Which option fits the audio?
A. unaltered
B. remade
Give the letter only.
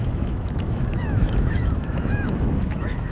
B